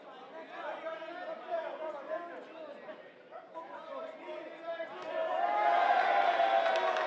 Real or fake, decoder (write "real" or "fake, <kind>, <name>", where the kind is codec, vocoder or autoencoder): real